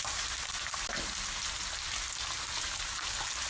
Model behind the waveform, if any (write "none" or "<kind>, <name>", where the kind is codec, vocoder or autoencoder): none